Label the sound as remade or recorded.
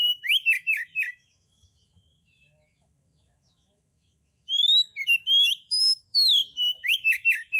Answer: remade